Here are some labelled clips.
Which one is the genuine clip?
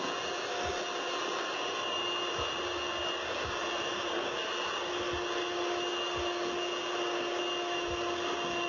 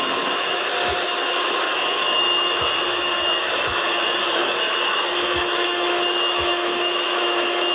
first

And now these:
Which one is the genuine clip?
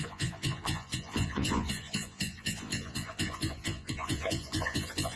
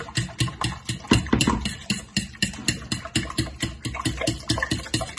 second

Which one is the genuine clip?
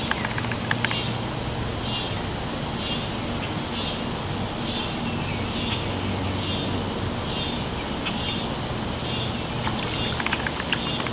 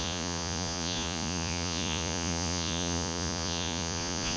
first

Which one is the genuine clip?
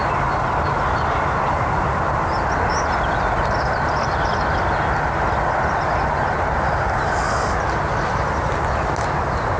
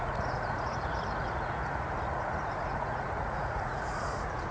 first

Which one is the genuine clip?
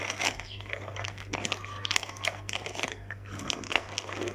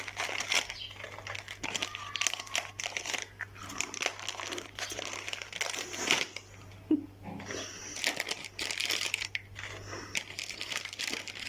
second